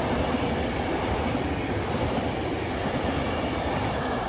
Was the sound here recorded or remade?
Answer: recorded